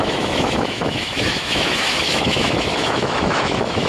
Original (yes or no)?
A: no